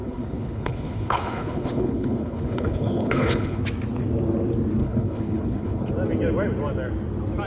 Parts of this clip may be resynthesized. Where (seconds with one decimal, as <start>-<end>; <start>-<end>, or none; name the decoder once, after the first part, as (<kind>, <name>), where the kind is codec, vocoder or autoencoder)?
0.0-3.6 (codec, HILCodec); 4.8-5.9